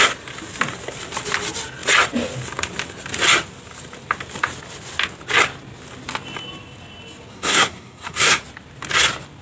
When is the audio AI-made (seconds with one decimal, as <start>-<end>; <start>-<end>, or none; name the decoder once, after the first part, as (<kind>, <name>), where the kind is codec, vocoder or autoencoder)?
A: 7.3-8.4 (codec, SNAC)